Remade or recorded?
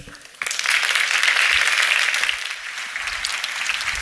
recorded